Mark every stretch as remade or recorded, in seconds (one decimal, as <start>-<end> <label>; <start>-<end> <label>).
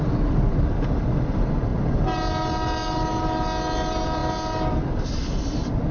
0.0-5.9 recorded